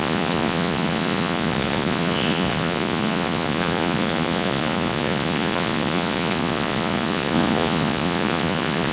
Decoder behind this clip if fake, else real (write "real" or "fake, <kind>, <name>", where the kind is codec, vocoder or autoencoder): fake, vocoder, Vocos